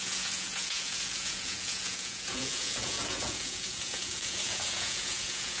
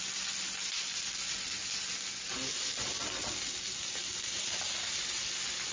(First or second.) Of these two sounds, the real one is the second